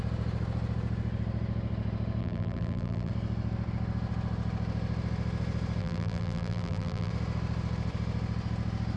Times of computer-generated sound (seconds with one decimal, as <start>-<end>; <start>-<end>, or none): 2.2-3.1; 5.8-7.1